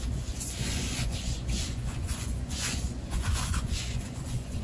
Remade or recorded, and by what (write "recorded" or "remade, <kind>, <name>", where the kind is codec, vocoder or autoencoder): remade, vocoder, Vocos